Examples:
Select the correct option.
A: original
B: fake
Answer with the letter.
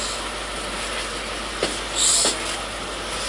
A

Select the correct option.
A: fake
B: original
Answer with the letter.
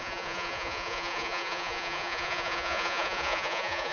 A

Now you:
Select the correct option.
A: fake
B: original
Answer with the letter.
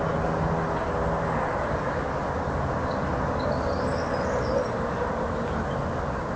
B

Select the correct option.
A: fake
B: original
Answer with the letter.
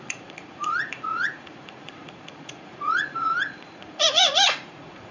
A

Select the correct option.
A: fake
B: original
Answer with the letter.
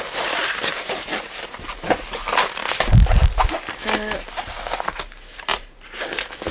B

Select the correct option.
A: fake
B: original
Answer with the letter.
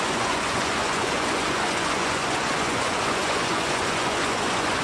A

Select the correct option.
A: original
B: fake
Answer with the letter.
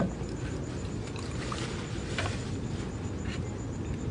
A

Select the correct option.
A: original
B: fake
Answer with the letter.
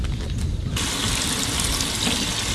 A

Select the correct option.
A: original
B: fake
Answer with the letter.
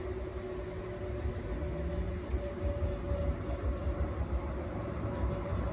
A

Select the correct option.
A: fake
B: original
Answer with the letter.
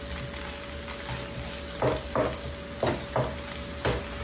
B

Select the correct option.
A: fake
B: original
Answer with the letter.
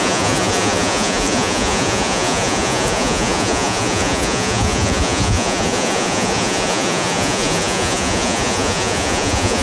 A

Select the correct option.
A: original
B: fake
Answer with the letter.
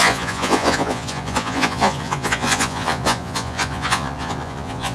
B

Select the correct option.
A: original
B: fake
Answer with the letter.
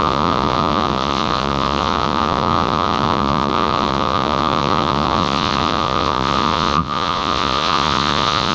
B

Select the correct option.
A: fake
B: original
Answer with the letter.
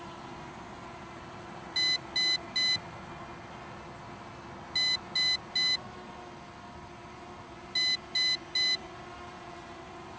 B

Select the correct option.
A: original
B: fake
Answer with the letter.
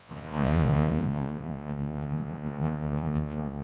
B